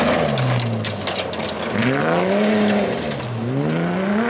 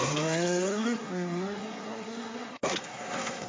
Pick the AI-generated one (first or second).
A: second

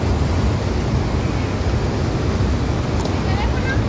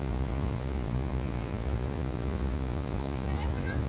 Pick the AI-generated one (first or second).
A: second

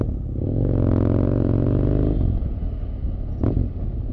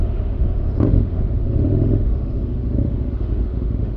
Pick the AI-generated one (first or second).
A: second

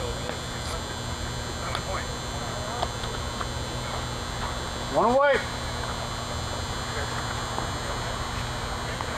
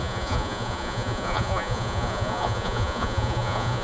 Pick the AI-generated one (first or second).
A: second